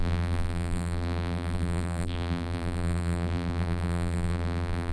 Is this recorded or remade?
remade